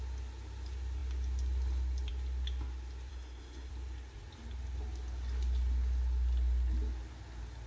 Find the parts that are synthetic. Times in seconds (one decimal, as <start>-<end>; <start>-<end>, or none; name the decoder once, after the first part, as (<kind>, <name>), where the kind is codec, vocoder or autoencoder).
3.1-3.7 (codec, SNAC)